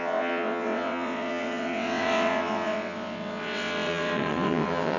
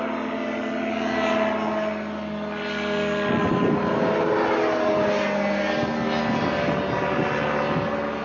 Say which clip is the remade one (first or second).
first